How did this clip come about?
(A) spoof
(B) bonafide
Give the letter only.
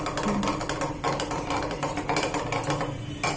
B